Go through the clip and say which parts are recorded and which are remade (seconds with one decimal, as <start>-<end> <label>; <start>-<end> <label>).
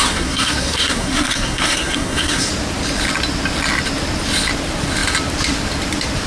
0.0-2.5 remade; 2.5-6.3 recorded